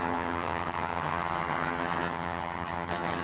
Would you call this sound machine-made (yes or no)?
yes